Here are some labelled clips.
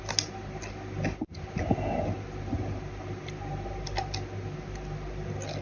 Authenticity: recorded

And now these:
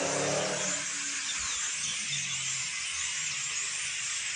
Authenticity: recorded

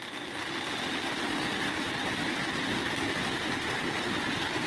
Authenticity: recorded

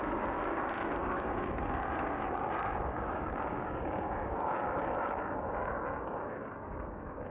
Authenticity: remade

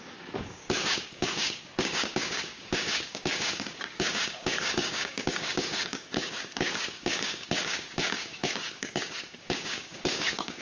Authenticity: remade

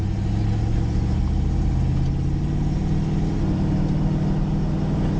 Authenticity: recorded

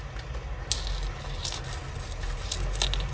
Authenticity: recorded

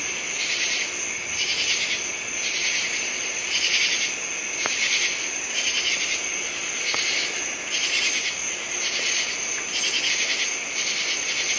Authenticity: recorded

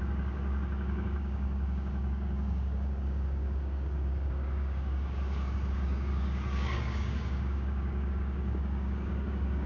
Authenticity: remade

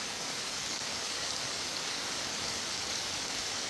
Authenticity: remade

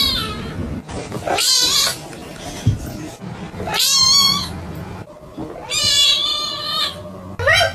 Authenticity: recorded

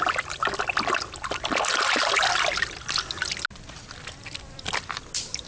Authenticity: recorded